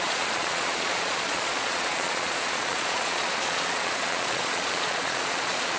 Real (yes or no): no